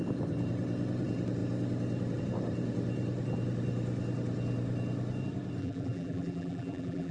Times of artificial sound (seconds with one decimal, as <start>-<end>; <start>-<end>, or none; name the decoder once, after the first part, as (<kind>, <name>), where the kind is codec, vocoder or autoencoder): 5.6-7.1 (vocoder, BigVGAN v2)